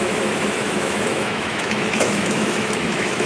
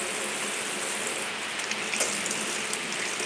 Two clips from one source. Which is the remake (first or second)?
first